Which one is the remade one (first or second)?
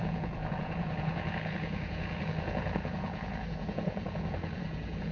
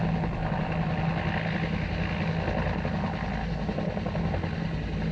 first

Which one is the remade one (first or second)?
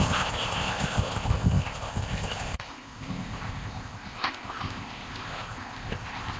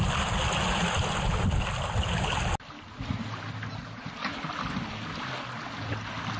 first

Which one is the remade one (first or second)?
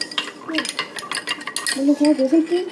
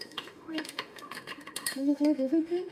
second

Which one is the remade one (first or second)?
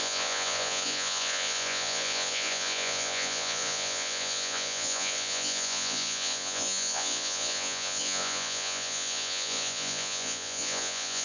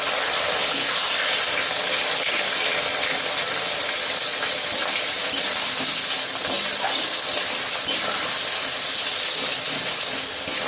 first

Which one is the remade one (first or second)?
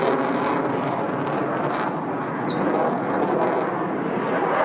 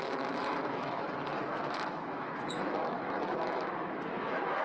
second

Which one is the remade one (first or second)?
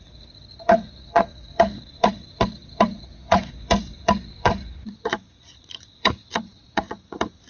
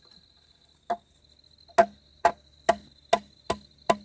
first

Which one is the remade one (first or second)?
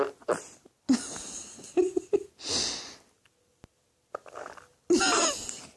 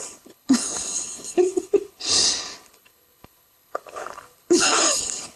second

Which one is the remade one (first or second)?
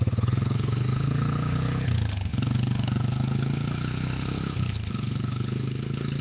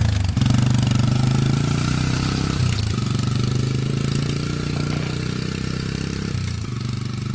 first